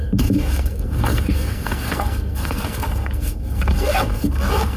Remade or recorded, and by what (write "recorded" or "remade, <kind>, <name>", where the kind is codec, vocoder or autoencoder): remade, codec, SNAC